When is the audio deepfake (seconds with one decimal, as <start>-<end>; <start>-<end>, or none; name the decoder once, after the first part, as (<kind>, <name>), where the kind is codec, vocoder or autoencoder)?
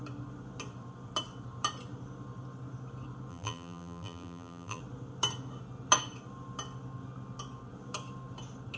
3.3-4.8 (vocoder, BigVGAN v2)